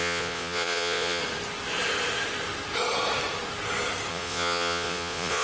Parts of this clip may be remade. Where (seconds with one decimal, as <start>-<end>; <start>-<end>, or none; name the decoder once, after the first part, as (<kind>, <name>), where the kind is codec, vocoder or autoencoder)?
0.0-1.2 (vocoder, Vocos); 4.1-5.4